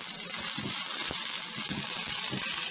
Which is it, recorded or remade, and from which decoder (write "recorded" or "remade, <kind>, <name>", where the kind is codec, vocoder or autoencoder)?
recorded